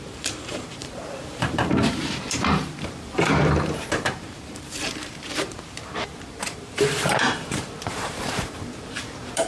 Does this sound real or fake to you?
fake